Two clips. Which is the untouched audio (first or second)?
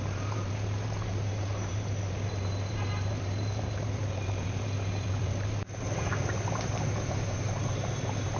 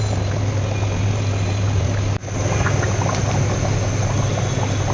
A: second